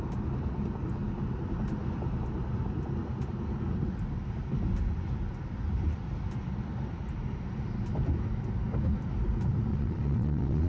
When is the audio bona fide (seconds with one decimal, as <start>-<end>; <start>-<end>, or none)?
0.0-9.7

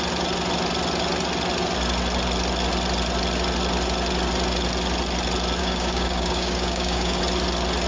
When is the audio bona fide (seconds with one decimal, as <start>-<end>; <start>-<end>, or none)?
0.0-5.6; 7.2-7.9

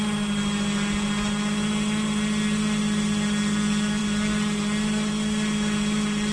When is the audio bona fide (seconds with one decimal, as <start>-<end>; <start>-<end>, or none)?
0.0-6.3

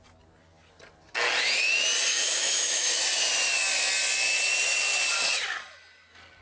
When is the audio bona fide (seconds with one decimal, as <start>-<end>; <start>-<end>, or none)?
0.0-2.1; 3.0-6.4

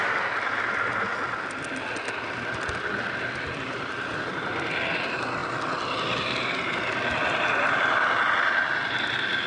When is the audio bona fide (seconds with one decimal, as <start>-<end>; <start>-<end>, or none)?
0.0-9.5